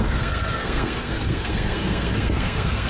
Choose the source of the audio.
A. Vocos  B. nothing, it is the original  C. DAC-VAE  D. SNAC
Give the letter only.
D